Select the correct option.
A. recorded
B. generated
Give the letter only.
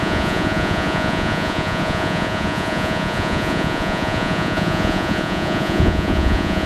B